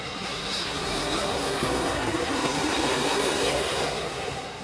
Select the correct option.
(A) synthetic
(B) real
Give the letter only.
A